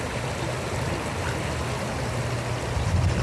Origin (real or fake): real